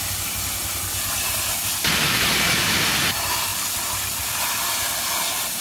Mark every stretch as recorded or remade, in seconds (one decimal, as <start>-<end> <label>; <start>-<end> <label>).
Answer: 0.0-3.5 recorded; 3.5-5.6 remade